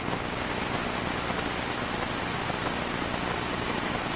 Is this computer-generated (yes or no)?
no